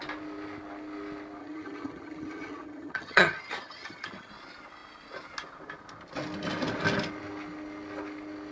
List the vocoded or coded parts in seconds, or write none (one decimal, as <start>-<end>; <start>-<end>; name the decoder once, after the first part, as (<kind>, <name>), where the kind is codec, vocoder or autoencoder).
1.4-4.3 (vocoder, HiFi-GAN)